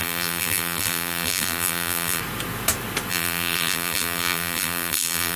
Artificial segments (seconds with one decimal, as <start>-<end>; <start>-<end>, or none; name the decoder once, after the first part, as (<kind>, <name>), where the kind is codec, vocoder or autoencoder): 0.0-2.2 (vocoder, BigVGAN v2); 3.1-5.4